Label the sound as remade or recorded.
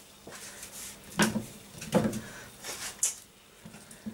recorded